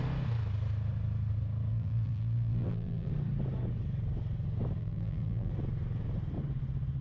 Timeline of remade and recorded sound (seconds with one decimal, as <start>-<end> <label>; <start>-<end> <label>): 0.0-1.7 recorded; 1.7-3.1 remade; 3.1-4.8 recorded; 4.8-5.5 remade; 5.5-7.0 recorded